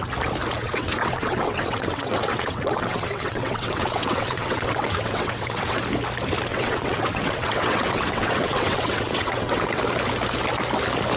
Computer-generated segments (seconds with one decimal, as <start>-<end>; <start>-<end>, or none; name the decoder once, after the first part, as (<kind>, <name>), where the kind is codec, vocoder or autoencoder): 0.6-5.8 (vocoder, WaveNeXt); 6.5-9.8